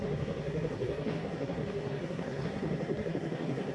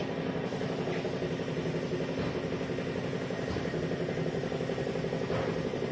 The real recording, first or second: second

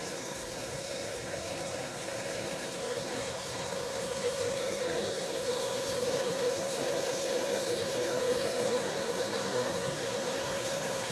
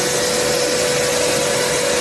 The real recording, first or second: second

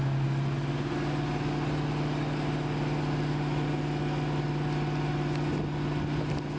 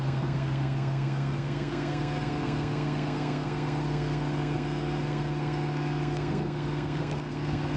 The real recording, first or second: first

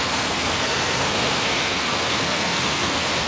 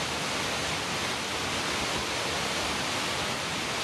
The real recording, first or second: second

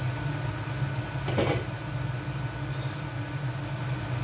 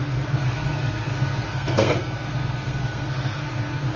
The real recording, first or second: first